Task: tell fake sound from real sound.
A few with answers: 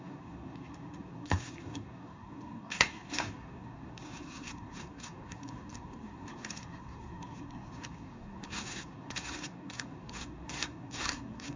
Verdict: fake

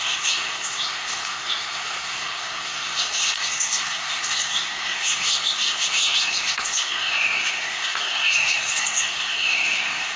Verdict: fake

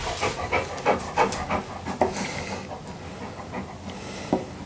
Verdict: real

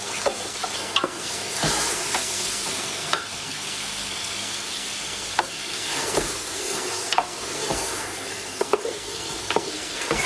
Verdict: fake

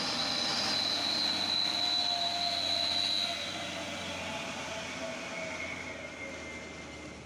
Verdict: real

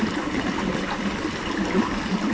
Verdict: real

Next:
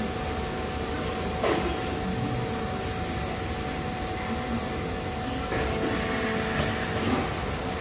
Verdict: real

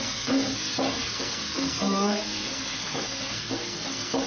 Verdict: fake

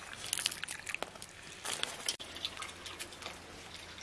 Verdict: real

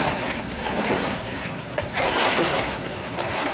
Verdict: fake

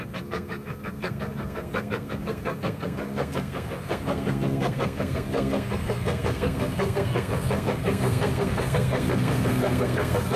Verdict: fake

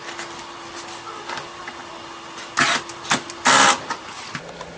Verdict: real